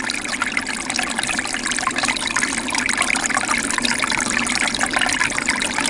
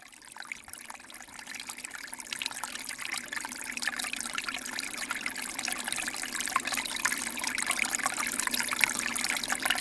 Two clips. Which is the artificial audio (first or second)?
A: first